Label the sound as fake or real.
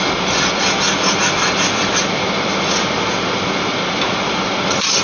real